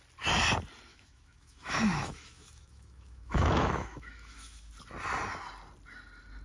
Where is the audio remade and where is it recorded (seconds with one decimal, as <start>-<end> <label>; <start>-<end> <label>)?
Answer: 0.0-0.9 recorded; 0.9-4.7 remade; 4.7-6.4 recorded